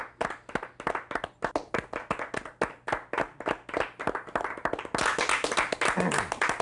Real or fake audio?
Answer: real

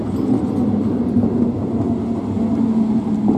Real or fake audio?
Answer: real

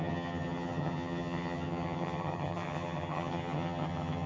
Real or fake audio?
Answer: fake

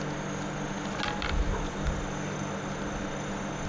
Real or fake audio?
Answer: real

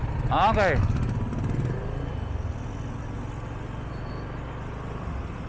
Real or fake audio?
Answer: real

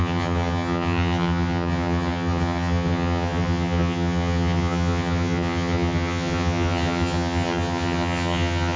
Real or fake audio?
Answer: fake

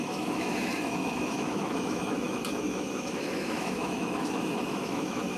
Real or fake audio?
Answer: fake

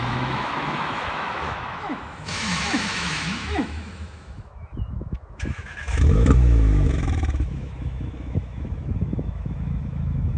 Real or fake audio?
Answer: fake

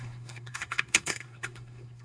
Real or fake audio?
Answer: fake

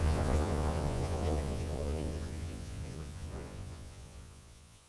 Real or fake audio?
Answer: fake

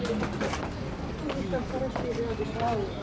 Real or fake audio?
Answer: real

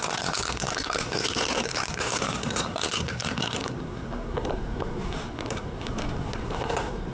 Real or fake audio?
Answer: fake